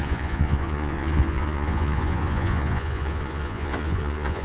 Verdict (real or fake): fake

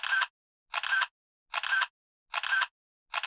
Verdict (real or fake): real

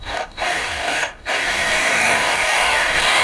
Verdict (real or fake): fake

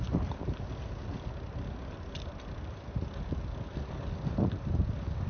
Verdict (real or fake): real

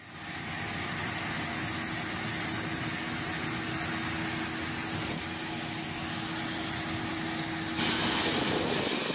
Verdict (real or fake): real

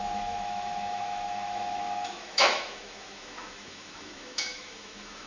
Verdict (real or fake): fake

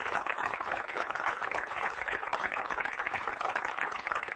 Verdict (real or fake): fake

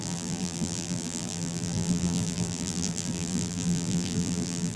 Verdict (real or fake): fake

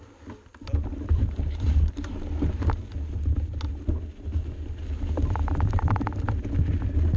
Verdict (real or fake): real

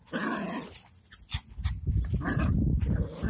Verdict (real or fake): real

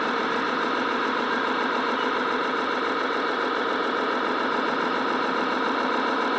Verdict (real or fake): fake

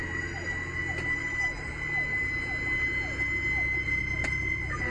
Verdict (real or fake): real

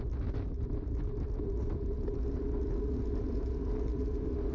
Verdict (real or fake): real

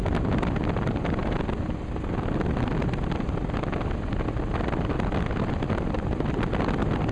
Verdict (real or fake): real